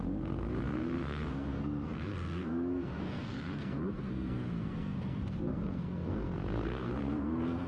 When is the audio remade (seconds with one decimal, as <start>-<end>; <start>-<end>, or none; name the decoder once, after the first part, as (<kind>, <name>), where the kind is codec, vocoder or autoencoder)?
0.0-7.7 (codec, SNAC)